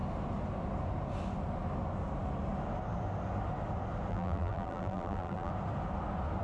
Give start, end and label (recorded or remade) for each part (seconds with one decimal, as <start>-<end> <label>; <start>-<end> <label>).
0.0-4.1 recorded; 4.1-5.5 remade; 5.5-6.4 recorded